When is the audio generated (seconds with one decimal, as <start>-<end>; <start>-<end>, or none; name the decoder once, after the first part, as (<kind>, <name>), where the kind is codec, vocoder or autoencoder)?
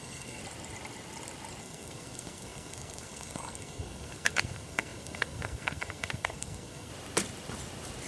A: 0.0-0.4 (codec, SNAC); 1.6-6.9